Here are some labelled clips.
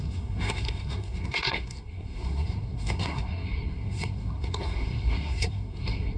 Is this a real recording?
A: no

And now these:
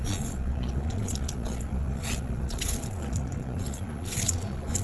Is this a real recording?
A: no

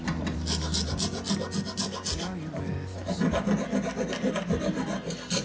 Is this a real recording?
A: yes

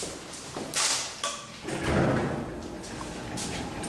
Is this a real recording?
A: yes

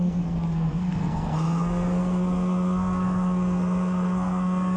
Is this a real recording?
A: no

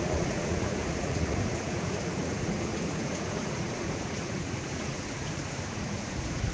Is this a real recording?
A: no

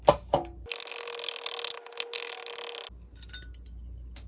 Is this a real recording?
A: yes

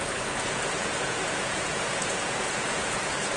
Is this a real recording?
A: no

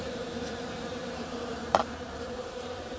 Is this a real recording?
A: no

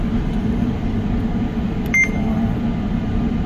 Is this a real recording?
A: yes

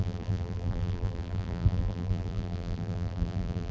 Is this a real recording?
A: no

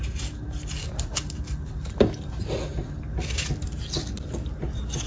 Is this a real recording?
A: yes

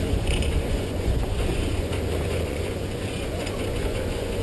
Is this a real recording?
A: no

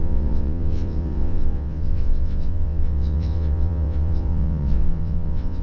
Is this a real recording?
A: no